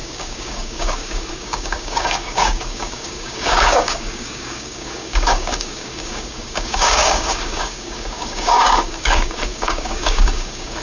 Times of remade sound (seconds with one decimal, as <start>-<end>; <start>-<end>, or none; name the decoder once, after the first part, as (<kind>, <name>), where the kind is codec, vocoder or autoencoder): 0.0-10.8 (codec, DAC)